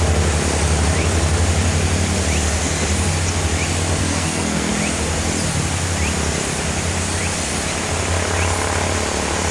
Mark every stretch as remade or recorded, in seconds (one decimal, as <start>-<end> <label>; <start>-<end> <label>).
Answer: 0.0-4.0 recorded; 4.0-4.7 remade; 4.7-9.5 recorded